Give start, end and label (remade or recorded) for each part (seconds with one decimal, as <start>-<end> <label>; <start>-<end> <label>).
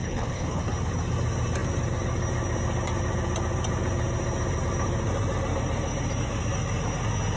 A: 0.0-0.6 remade; 0.6-7.4 recorded